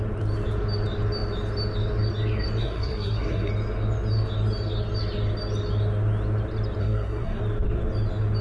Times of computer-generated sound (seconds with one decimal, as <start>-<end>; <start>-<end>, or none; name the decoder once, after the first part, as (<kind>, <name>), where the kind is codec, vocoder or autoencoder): 2.6-3.5 (codec, SNAC); 6.8-7.4